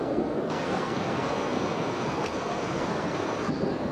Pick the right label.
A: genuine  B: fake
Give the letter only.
B